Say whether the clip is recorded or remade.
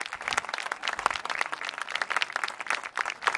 recorded